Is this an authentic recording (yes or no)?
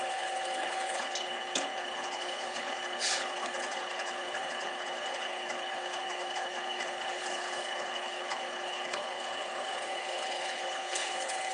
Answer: no